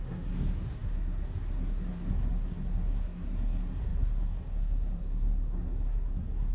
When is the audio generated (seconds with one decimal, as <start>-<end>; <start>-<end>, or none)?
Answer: 0.0-6.5